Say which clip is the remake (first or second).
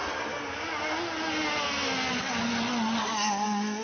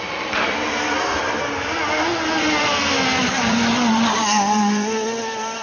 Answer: second